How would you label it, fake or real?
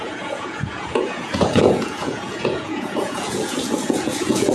fake